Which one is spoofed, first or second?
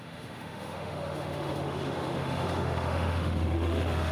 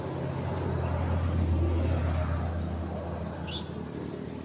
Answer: first